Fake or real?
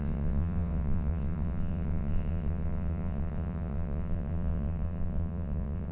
fake